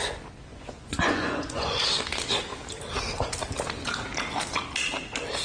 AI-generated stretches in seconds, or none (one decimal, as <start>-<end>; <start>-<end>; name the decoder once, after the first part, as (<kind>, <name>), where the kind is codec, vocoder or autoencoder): 0.5-1.8 (vocoder, Vocos)